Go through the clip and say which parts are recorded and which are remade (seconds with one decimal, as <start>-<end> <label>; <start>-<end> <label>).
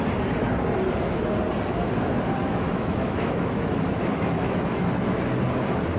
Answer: 0.0-2.4 recorded; 2.4-5.2 remade; 5.2-6.0 recorded